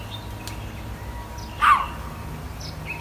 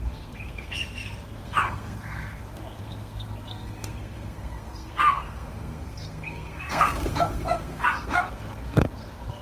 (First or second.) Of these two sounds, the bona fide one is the first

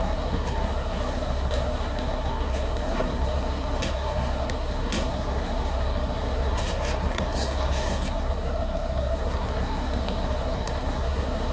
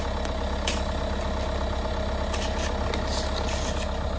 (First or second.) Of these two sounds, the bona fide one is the second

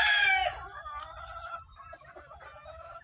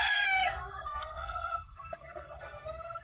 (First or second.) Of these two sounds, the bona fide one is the first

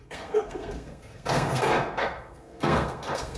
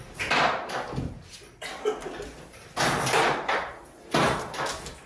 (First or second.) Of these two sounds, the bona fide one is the second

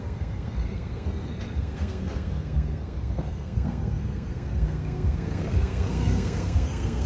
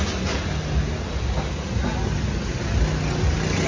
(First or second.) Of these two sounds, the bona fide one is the second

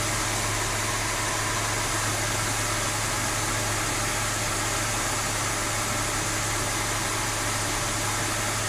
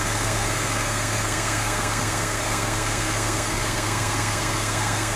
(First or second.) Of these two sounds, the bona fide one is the first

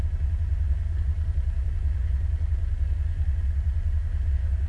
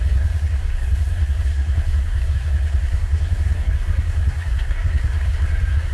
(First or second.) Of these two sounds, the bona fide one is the first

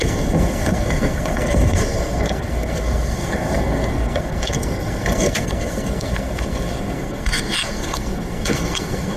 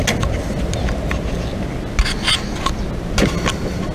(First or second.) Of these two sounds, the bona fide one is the second